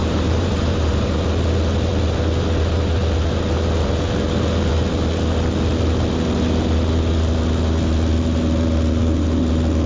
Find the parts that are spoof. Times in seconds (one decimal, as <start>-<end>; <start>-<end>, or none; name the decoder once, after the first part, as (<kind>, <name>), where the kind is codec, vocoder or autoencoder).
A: 0.0-1.2 (vocoder, BigVGAN v2)

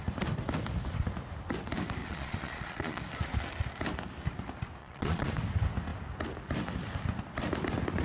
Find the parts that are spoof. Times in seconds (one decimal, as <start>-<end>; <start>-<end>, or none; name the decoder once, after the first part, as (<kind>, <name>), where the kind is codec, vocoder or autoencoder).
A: 2.0-3.0 (vocoder, Vocos); 4.8-5.3

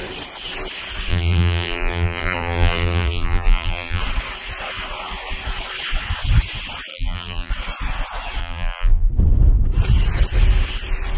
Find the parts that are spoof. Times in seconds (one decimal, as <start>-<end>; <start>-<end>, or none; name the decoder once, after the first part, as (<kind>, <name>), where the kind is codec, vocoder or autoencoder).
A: 1.1-4.0 (vocoder, BigVGAN v2); 6.9-7.5; 8.4-9.1

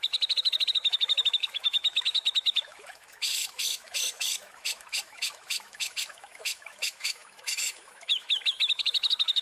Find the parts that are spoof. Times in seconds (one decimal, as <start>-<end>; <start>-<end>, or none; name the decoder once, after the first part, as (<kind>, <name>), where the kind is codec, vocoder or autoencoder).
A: 0.0-9.4 (autoencoder, DAC-VAE)